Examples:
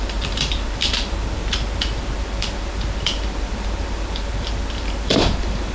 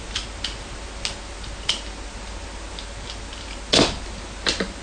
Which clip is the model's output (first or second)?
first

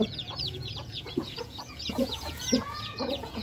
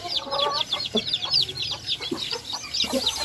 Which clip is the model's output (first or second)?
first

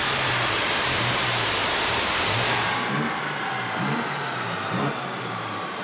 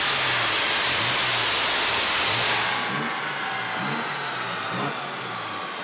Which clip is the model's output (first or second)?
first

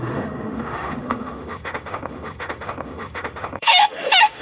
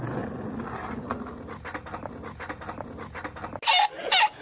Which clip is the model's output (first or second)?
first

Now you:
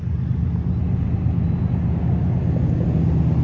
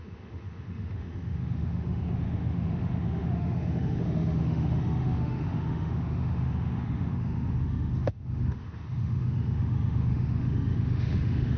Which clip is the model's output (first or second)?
second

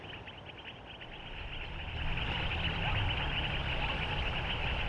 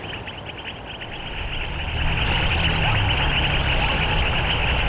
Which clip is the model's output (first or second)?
first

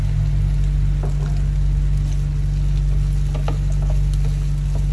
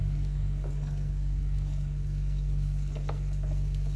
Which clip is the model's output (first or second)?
second